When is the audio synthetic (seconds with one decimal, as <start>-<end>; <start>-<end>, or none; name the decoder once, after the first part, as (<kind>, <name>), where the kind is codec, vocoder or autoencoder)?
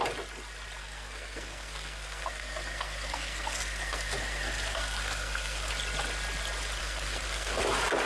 0.8-5.7 (codec, SNAC); 6.8-7.6